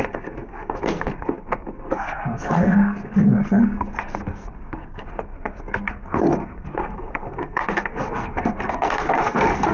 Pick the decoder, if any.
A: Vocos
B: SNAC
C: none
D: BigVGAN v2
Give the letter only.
B